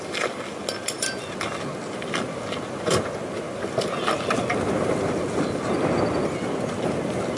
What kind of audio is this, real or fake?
real